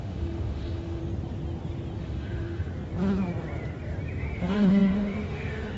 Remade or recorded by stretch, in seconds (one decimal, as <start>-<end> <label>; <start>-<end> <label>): 0.0-1.0 remade; 1.0-2.0 recorded; 2.0-2.7 remade; 2.7-4.2 recorded; 4.2-5.8 remade